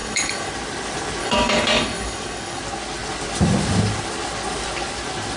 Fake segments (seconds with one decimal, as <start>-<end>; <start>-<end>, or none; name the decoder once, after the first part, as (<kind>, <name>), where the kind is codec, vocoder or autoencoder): 0.0-0.5 (codec, DAC); 1.2-2.6